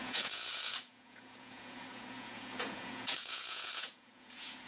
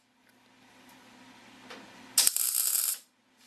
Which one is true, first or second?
second